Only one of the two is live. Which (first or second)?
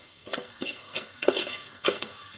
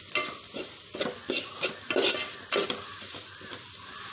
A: second